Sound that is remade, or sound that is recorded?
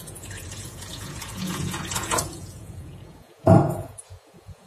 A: remade